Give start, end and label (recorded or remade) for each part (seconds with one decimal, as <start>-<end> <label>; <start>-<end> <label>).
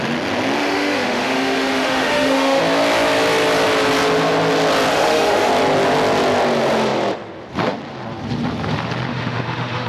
0.0-0.6 recorded; 0.6-2.6 remade; 2.6-4.9 recorded; 4.9-5.5 remade; 5.5-9.1 recorded; 9.1-9.9 remade